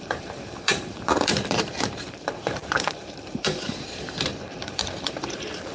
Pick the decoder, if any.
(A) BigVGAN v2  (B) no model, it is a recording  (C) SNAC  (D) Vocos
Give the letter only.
A